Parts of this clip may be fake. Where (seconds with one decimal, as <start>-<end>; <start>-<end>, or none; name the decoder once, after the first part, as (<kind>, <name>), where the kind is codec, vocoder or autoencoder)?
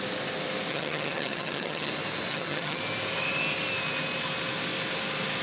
0.7-1.9 (vocoder, HiFi-GAN); 2.3-2.8